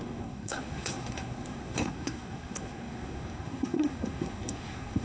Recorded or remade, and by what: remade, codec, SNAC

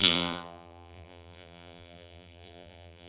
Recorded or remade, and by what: remade, vocoder, BigVGAN v2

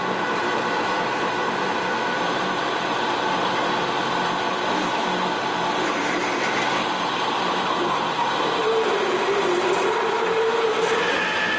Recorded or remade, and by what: remade, vocoder, BigVGAN v2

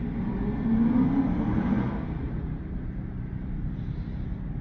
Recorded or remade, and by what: recorded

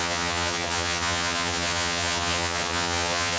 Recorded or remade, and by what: remade, vocoder, HiFi-GAN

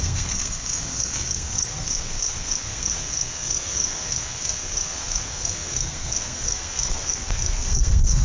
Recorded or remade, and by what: remade, codec, SNAC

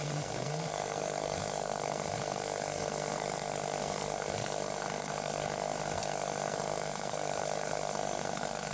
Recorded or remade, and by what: remade, codec, SNAC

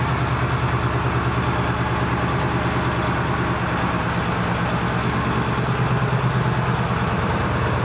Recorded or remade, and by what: recorded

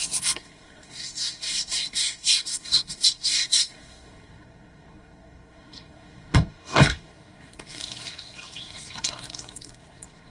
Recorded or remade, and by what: remade, codec, SNAC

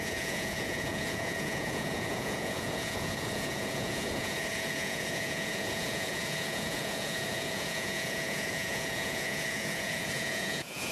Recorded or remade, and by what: remade, vocoder, Vocos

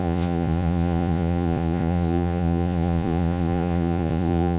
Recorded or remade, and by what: remade, vocoder, Vocos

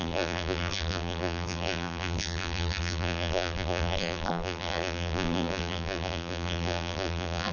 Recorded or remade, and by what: remade, vocoder, BigVGAN v2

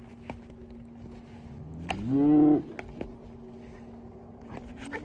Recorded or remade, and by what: recorded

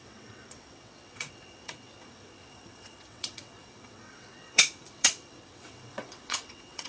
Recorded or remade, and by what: remade, vocoder, WaveNeXt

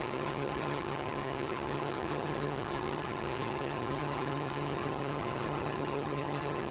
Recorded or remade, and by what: remade, vocoder, HiFi-GAN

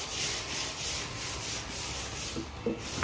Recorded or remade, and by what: recorded